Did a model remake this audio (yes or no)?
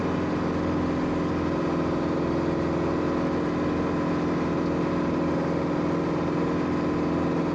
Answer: no